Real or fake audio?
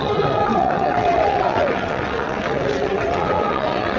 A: fake